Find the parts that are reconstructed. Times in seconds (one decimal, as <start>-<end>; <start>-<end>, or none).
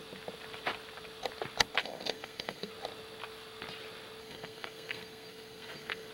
1.8-2.7; 4.2-6.1